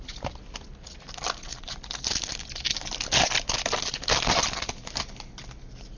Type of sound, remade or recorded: recorded